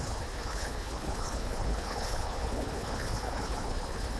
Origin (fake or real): fake